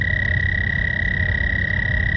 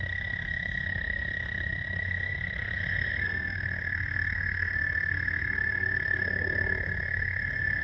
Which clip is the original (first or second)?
first